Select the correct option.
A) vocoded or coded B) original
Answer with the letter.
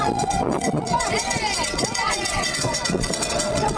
A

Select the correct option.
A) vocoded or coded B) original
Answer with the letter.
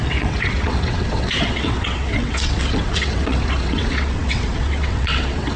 A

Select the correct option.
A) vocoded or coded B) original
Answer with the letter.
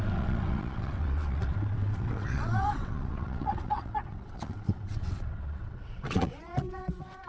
A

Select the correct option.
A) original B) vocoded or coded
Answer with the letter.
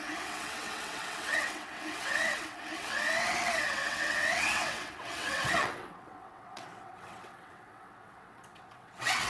B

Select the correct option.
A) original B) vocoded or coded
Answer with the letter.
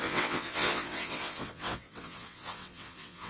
B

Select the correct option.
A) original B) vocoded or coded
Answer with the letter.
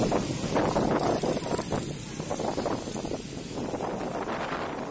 A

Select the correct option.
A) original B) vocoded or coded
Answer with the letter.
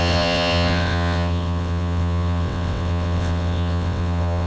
B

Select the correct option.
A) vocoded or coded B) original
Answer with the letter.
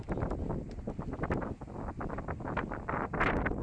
B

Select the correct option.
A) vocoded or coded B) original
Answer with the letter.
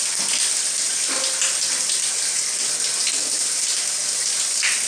B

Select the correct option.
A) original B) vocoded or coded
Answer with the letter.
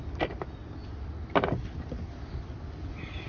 A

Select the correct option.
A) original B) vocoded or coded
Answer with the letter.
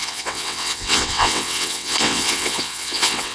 B